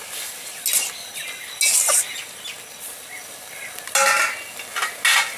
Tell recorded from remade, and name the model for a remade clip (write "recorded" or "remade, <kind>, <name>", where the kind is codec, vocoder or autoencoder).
recorded